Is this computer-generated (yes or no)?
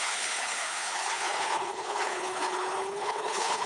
yes